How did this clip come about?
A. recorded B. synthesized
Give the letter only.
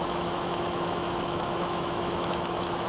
B